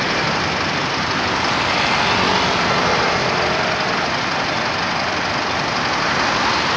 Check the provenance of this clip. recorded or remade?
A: recorded